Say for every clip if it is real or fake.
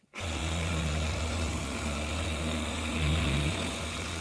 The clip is fake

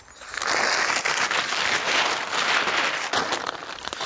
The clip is real